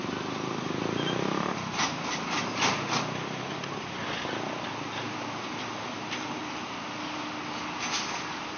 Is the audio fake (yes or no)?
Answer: no